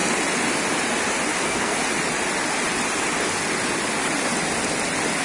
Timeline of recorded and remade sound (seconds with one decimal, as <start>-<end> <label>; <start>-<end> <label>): 0.0-1.4 recorded; 1.4-1.8 remade; 1.8-5.2 recorded